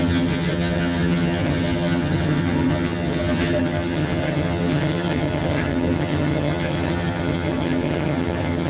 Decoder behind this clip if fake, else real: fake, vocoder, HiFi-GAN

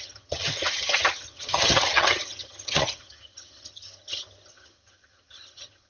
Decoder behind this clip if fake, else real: fake, vocoder, HiFi-GAN